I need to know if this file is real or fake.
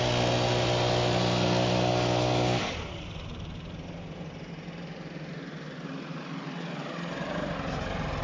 real